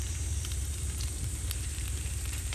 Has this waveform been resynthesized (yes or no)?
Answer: yes